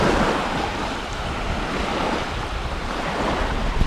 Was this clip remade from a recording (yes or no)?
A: no